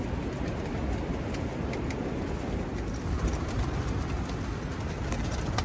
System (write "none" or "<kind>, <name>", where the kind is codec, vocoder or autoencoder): none